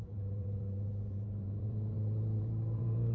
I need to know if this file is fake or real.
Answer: fake